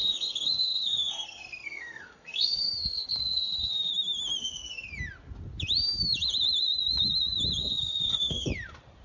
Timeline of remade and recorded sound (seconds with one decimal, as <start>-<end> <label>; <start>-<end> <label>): 0.0-3.9 remade; 3.9-4.4 recorded; 4.4-4.9 remade; 4.9-7.6 recorded; 7.6-8.5 remade; 8.5-9.0 recorded